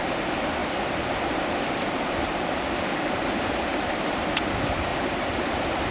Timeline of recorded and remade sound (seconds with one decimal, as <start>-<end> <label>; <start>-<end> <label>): 0.0-0.6 recorded; 0.6-2.6 remade; 2.6-3.7 recorded; 3.7-4.3 remade; 4.3-4.9 recorded; 4.9-5.9 remade